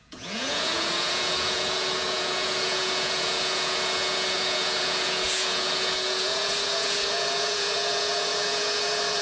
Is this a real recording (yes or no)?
no